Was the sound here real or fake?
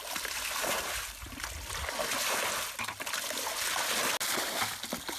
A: real